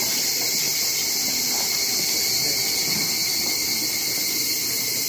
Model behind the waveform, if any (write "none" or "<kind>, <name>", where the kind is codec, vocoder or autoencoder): none